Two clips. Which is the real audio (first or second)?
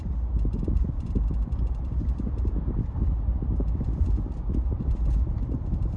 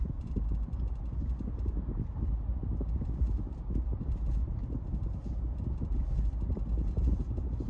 second